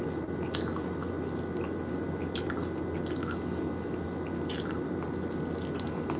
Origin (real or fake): real